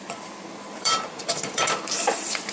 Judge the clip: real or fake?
fake